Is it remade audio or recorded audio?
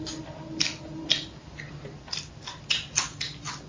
recorded